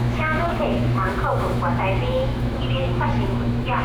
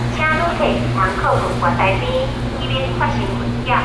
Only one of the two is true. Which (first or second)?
second